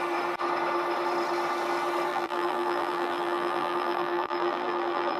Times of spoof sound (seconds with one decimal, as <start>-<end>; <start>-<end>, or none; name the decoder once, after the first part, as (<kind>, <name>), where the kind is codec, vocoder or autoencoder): 2.1-5.2 (vocoder, BigVGAN v2)